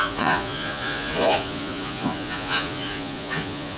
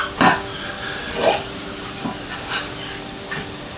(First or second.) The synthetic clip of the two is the first